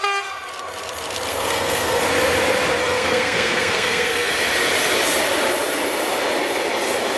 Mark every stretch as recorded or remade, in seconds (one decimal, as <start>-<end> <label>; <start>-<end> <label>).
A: 0.0-1.3 recorded; 1.3-2.0 remade; 2.0-2.8 recorded; 2.8-4.3 remade; 4.3-7.2 recorded